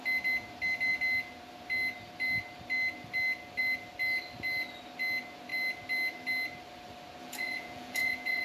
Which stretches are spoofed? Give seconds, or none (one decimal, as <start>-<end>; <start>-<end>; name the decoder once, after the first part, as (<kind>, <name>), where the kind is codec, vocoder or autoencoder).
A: 7.2-8.4 (vocoder, Vocos)